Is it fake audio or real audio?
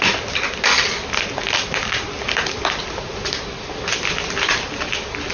real